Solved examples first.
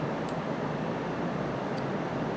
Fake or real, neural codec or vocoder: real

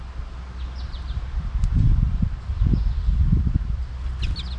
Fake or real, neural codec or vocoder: real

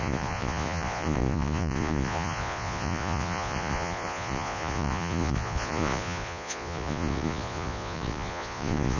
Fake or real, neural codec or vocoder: fake, vocoder, Vocos